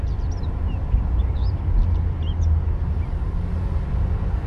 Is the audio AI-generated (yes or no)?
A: no